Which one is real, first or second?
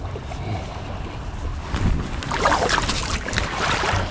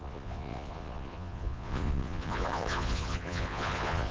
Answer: first